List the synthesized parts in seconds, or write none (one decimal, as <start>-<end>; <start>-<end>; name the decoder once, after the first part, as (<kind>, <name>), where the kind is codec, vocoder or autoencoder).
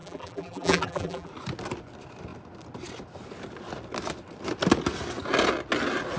0.0-1.3 (vocoder, BigVGAN v2)